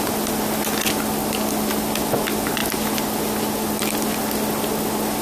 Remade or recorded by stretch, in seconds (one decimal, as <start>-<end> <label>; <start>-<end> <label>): 0.0-5.2 recorded